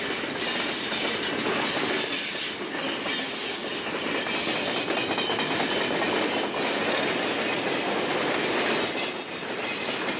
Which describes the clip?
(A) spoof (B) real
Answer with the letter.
B